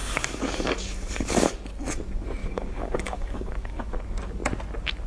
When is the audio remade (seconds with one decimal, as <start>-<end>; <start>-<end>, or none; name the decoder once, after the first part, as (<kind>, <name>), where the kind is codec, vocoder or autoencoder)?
0.0-1.5 (codec, DAC); 2.4-3.8